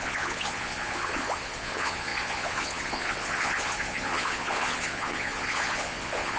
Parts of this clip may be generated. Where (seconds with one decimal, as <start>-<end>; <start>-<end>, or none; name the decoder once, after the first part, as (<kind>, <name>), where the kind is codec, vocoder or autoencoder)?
0.0-6.4 (vocoder, Vocos)

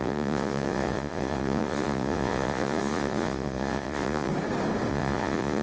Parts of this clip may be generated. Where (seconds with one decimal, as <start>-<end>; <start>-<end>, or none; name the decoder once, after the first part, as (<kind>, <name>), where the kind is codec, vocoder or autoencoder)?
0.0-4.3 (vocoder, Vocos); 4.9-5.6

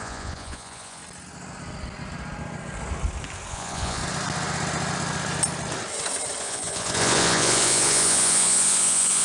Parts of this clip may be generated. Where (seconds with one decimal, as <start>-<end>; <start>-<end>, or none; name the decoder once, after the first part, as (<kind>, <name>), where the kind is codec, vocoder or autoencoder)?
0.0-1.0 (vocoder, Vocos); 3.5-4.0; 6.4-9.2

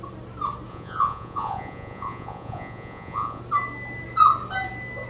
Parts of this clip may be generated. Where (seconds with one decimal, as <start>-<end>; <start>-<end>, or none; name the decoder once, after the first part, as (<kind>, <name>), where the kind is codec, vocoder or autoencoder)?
0.7-3.4 (vocoder, Vocos)

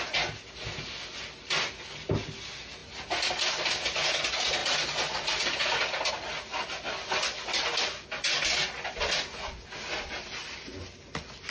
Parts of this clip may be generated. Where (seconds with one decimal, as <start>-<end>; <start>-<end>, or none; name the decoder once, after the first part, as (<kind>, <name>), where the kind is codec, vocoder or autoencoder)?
none

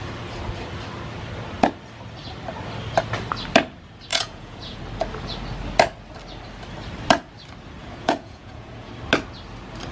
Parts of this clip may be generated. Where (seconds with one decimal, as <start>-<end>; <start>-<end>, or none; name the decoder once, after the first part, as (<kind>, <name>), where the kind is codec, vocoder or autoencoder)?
4.1-4.8 (vocoder, Vocos); 7.8-8.9

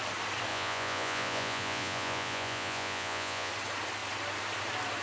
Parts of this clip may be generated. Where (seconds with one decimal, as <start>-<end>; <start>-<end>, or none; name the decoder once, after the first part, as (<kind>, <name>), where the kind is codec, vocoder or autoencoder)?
0.5-3.5 (vocoder, Vocos)

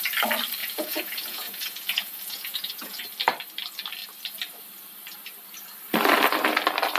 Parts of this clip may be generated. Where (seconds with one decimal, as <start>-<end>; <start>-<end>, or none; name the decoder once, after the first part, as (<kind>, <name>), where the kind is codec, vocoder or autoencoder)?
0.6-3.0 (vocoder, Vocos)